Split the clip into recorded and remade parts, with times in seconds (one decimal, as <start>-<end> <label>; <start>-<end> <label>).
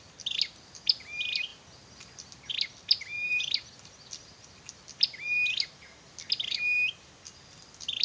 0.0-8.0 recorded